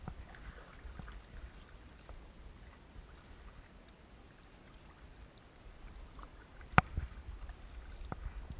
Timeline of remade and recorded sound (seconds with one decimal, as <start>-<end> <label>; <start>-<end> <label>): 0.0-8.6 recorded